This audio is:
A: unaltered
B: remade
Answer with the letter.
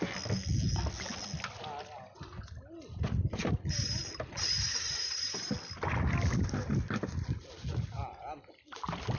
A